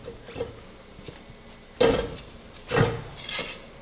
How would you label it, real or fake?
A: real